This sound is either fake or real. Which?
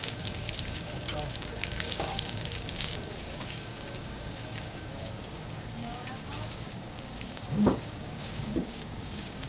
fake